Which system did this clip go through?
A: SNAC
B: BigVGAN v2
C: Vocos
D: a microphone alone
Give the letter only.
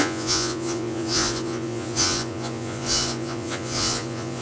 C